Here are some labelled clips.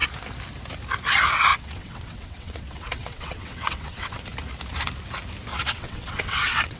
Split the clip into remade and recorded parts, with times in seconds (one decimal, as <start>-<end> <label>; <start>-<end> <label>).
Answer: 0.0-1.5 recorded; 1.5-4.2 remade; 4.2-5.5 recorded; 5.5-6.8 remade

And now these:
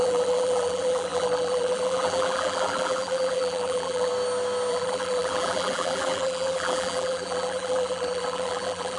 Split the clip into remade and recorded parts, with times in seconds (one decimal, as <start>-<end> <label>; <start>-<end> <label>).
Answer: 0.0-4.1 remade; 4.1-4.7 recorded; 4.7-9.0 remade

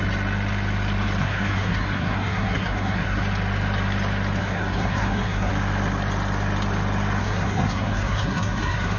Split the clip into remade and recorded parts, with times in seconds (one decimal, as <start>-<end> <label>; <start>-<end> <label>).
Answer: 0.0-1.2 recorded; 1.2-3.2 remade; 3.2-4.4 recorded; 4.4-5.5 remade; 5.5-7.2 recorded; 7.2-9.0 remade